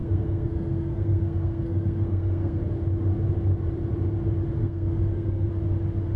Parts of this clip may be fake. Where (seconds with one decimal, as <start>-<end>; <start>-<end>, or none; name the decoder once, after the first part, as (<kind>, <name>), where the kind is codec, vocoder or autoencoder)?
0.0-2.6 (codec, SNAC); 4.6-5.5